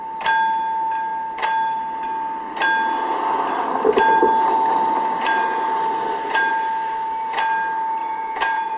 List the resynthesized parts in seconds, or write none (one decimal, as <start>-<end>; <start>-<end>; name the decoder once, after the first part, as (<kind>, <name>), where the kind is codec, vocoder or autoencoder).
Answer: 8.0-8.8 (vocoder, Vocos)